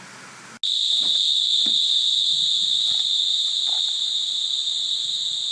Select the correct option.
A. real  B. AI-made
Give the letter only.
A